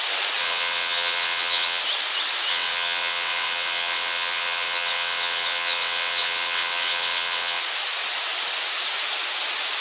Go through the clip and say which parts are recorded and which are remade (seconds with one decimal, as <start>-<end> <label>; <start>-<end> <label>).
0.0-0.4 recorded; 0.4-1.8 remade; 1.8-2.5 recorded; 2.5-7.6 remade; 7.6-9.8 recorded